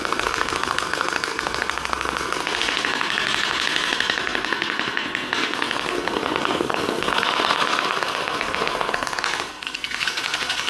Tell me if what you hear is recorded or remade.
remade